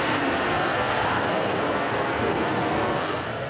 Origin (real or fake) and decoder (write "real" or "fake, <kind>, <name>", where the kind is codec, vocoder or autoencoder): fake, codec, SNAC